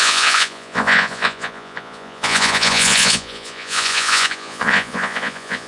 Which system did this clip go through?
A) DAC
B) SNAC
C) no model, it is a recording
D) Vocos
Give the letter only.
D